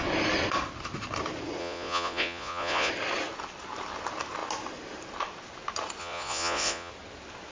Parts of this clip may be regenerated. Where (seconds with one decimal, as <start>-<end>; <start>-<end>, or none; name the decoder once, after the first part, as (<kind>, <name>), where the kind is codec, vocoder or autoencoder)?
1.6-2.9 (vocoder, Vocos); 6.0-6.9

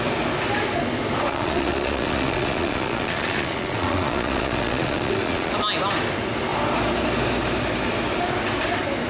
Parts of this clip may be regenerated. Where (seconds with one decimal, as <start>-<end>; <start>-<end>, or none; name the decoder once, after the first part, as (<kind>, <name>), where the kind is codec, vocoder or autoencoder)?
1.3-5.5 (vocoder, Vocos)

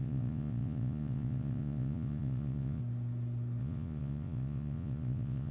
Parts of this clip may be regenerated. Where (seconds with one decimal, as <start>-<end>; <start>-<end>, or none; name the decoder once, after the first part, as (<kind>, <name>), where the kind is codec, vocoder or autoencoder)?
0.0-2.8 (vocoder, Vocos); 3.6-5.5

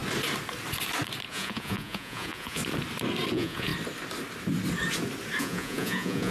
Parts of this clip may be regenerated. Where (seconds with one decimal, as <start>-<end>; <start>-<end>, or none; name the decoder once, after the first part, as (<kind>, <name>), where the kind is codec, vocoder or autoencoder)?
1.3-2.6 (vocoder, Vocos); 3.3-3.7; 5.4-6.3

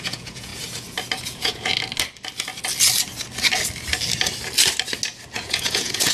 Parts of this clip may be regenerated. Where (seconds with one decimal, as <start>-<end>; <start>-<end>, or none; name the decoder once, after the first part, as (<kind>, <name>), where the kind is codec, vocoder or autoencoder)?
0.0-0.5 (vocoder, Vocos); 1.2-1.7; 5.4-6.1

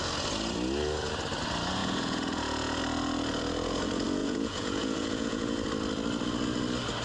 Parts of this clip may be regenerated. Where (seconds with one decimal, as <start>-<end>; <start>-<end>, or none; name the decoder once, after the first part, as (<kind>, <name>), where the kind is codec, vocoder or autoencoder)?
1.8-2.8 (vocoder, Vocos); 4.2-5.7